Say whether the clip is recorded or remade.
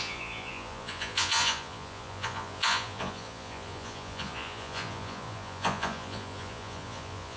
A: remade